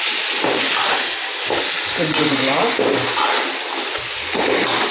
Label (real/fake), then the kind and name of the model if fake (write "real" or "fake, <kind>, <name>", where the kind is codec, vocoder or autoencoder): real